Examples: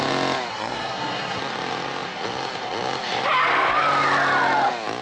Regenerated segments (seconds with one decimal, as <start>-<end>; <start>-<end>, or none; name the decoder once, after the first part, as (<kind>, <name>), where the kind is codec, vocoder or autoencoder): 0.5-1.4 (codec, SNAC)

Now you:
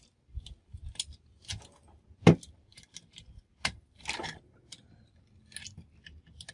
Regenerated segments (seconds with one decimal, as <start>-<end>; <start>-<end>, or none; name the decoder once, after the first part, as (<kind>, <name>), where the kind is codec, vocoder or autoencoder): none

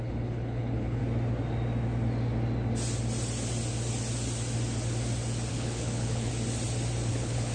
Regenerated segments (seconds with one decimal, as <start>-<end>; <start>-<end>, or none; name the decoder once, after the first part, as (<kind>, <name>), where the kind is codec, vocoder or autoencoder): 0.0-1.0 (codec, HILCodec); 5.5-6.3; 7.1-7.5